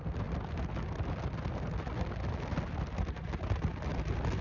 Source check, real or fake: real